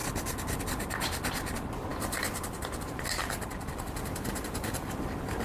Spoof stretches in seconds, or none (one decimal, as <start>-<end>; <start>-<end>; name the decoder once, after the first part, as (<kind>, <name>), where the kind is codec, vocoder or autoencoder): none